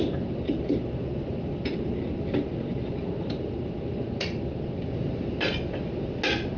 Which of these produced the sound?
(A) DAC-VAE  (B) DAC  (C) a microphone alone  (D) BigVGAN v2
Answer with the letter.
C